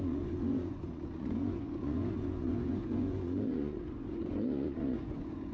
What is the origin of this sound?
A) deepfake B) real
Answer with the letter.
A